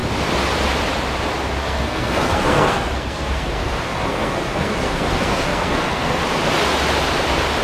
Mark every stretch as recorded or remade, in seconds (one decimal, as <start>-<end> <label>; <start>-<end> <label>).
0.0-1.6 recorded; 1.6-6.2 remade; 6.2-7.6 recorded